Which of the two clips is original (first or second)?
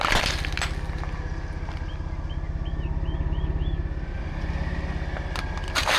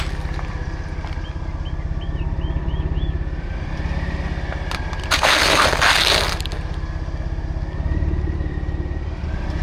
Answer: first